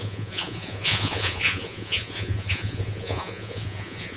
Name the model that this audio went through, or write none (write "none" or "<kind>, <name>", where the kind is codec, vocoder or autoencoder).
vocoder, Vocos